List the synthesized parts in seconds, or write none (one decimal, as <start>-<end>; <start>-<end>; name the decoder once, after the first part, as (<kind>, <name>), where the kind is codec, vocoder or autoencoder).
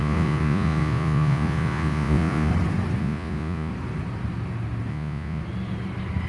0.0-2.5 (vocoder, Vocos); 3.0-3.7; 4.9-5.4